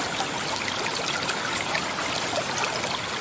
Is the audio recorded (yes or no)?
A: yes